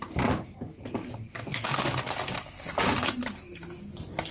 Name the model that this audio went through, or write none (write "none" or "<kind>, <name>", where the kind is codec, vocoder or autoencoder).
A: none